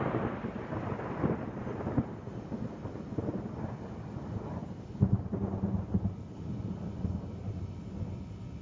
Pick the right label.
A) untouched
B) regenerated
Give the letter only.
A